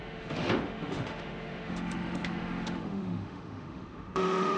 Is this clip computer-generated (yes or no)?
yes